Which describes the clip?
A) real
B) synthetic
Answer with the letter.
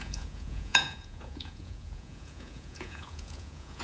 B